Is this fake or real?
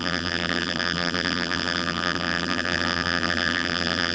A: fake